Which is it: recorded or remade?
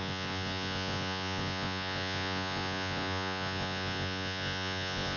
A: remade